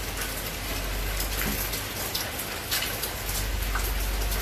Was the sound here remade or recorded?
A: recorded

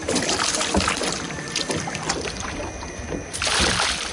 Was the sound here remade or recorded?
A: recorded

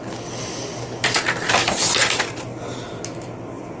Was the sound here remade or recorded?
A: recorded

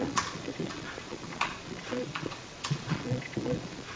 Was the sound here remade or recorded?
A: remade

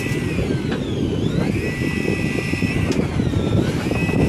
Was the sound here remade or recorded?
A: recorded